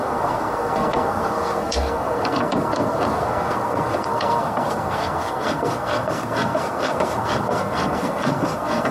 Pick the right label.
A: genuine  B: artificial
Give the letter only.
B